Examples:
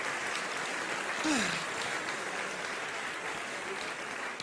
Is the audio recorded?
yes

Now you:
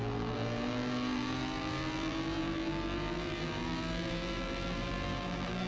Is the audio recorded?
no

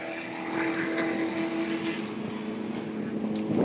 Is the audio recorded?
yes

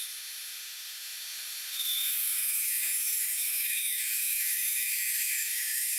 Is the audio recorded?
no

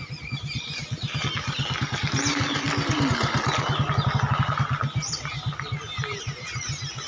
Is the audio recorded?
yes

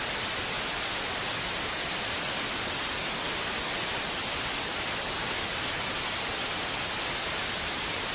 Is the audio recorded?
yes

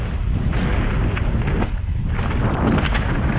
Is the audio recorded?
yes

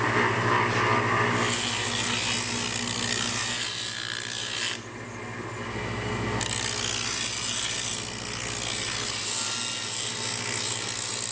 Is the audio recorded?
yes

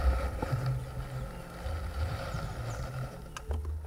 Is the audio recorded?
yes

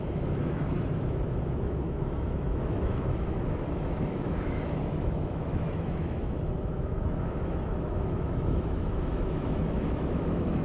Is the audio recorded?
no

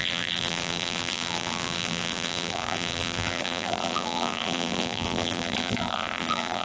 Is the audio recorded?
no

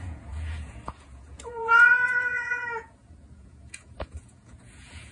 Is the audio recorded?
no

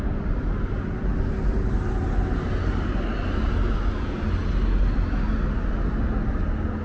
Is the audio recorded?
yes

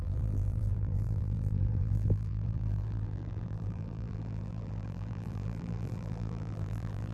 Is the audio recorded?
no